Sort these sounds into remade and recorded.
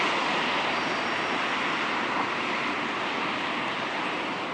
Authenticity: recorded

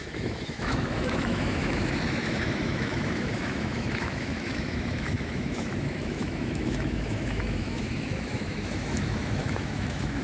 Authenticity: remade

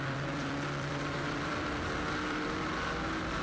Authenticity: remade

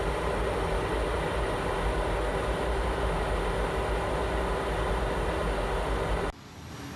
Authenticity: recorded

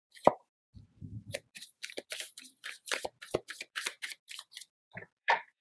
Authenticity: remade